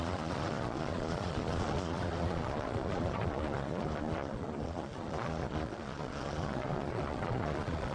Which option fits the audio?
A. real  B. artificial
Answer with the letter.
B